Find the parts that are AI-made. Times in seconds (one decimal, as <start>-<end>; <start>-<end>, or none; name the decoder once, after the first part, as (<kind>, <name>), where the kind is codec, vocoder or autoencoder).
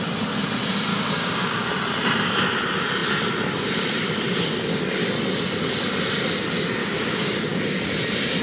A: 0.9-1.7 (codec, DAC); 6.8-7.6